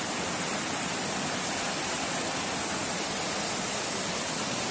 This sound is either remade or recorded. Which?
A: recorded